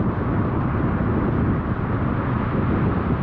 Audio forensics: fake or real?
real